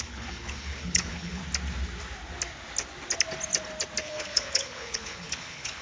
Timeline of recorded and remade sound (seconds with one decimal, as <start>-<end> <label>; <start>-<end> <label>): 0.0-1.4 remade; 1.4-4.0 recorded; 4.0-5.8 remade